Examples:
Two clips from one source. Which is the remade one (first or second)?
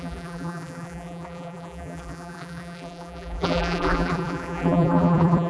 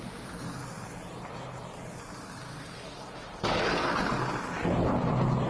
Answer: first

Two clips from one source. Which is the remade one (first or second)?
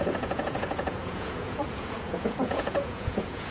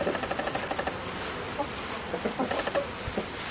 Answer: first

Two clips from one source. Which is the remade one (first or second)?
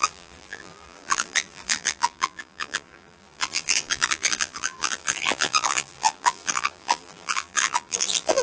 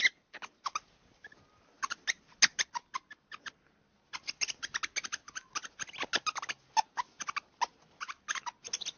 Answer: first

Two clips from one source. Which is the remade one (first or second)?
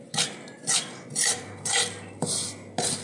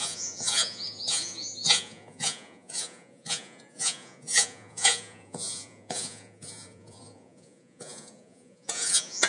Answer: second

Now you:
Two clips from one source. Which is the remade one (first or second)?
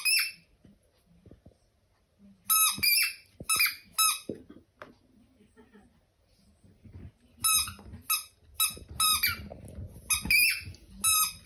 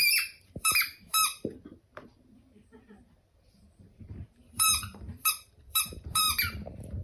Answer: second